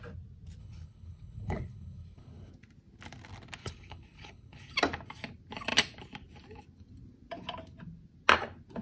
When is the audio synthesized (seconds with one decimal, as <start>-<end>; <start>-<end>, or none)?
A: 0.6-2.5; 3.6-4.7